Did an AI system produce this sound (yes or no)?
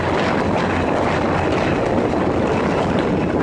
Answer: no